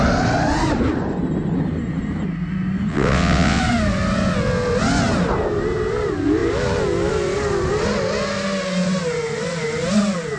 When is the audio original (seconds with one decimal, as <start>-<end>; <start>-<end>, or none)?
0.0-2.9; 3.6-10.4

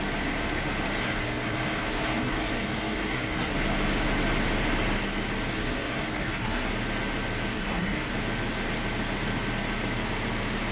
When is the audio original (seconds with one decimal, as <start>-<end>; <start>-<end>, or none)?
0.0-1.0; 3.5-5.5; 6.7-7.5; 8.1-10.7

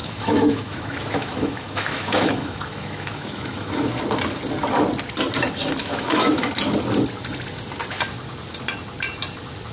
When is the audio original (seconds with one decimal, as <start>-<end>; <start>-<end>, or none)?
3.9-5.8; 6.4-9.7

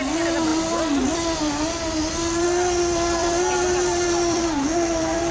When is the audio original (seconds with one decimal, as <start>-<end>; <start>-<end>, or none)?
0.0-3.2; 4.4-5.3

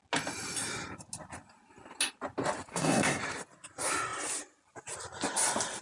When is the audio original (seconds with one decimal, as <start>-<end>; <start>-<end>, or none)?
0.0-2.7; 3.2-5.8